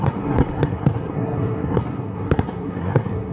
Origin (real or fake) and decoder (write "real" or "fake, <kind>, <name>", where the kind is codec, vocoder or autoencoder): fake, codec, SNAC